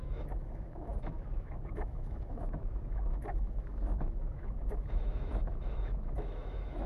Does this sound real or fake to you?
fake